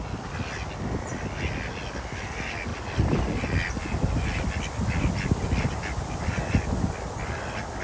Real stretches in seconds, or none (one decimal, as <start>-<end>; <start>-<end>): 0.0-7.8